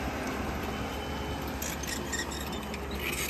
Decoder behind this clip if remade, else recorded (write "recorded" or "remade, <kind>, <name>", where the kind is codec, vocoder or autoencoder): recorded